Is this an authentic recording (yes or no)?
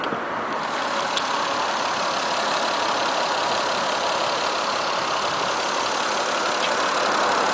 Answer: yes